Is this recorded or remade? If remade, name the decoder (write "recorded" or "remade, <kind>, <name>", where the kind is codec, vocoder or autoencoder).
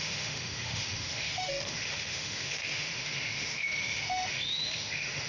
remade, autoencoder, DAC-VAE